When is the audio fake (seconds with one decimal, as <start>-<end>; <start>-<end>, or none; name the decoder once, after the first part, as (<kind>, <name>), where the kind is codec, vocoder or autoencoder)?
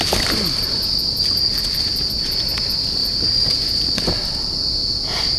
3.0-3.7 (vocoder, BigVGAN v2)